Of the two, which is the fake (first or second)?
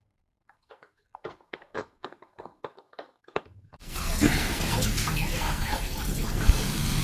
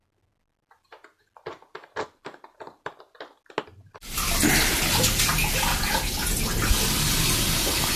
first